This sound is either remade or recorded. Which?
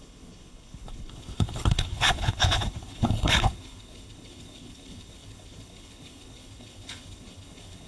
remade